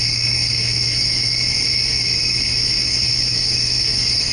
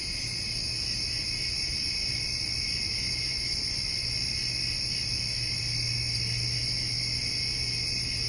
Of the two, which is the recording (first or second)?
second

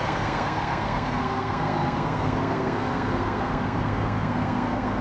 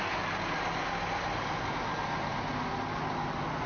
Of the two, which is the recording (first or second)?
second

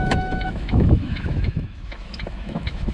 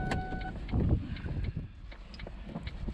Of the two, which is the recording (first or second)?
second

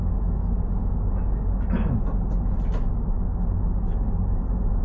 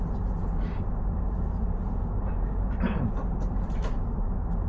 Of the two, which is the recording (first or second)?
first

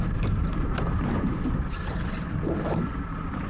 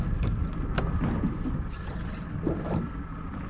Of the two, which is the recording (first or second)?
second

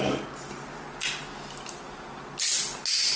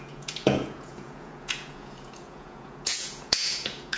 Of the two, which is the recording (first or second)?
first